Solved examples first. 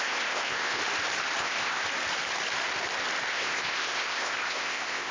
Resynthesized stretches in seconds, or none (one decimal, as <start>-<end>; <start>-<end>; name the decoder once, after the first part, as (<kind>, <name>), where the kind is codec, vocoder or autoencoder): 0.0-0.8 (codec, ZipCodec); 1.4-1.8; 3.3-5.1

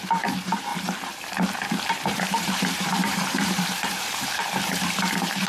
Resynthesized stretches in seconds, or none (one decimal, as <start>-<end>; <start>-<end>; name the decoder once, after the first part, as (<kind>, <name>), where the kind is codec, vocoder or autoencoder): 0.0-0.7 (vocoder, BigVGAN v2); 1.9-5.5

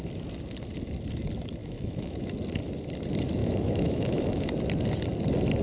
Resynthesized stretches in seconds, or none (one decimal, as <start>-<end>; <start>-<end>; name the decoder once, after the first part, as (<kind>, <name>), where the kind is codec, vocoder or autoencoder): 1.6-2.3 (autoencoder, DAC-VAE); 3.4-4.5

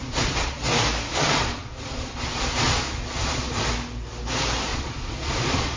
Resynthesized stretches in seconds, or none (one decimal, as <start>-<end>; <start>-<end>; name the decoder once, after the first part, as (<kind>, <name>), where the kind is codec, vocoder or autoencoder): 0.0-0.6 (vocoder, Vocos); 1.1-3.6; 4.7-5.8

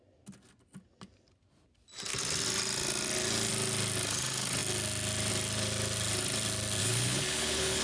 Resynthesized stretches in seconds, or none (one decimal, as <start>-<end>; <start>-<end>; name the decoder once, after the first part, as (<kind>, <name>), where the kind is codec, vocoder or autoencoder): 6.8-7.8 (codec, HILCodec)